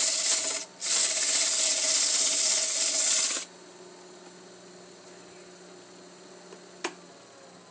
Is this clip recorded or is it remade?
recorded